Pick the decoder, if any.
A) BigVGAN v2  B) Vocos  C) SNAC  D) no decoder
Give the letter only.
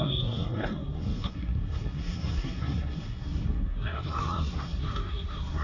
C